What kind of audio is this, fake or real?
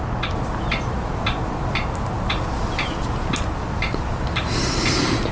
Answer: real